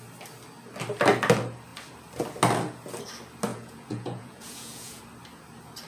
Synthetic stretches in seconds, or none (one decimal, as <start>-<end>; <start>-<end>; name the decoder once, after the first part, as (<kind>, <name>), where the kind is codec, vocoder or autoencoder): 3.5-5.0 (vocoder, Vocos)

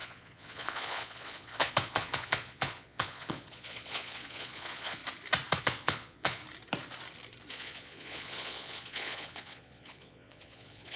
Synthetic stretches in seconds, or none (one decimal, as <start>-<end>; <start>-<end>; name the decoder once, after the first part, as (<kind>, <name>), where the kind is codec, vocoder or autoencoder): 0.0-5.0 (vocoder, Vocos); 5.6-6.4; 7.5-11.0

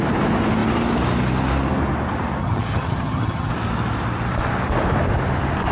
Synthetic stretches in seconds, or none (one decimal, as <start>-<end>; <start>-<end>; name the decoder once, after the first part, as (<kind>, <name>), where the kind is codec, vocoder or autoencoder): 2.4-3.5 (vocoder, HiFi-GAN)

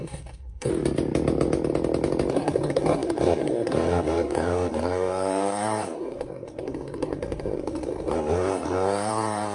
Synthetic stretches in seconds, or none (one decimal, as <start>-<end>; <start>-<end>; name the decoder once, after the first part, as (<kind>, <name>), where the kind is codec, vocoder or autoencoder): 0.0-0.7 (codec, SNAC); 2.3-9.5

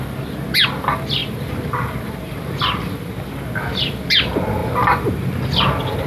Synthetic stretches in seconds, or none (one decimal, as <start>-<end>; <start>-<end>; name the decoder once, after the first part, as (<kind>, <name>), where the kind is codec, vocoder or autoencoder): none

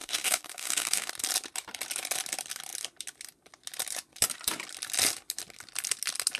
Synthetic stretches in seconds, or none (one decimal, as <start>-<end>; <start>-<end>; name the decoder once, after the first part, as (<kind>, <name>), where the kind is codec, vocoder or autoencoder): 0.0-1.1 (codec, DAC)

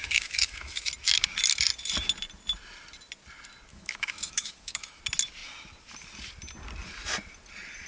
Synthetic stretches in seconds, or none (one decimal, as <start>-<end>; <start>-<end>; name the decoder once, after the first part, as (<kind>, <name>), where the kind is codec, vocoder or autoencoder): 0.0-0.9 (autoencoder, DAC-VAE); 3.7-5.0

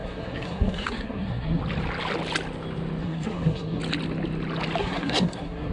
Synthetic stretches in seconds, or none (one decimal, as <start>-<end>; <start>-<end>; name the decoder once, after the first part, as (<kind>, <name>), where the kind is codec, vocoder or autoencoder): 0.0-1.6 (codec, SNAC); 3.0-3.8; 4.8-5.7